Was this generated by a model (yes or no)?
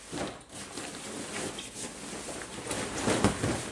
no